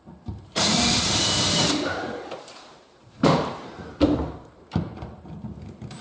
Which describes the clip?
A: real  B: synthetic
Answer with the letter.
B